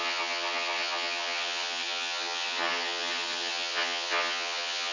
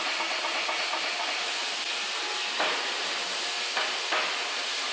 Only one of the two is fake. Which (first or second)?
first